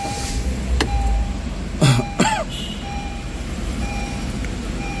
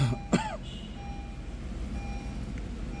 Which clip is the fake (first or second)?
first